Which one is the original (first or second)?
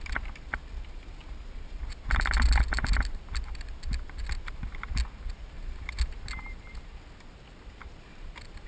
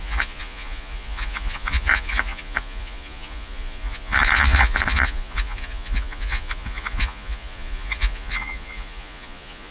first